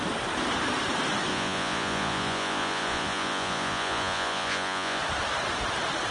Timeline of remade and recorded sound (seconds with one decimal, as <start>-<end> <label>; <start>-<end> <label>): 0.0-1.3 recorded; 1.3-5.0 remade; 5.0-6.1 recorded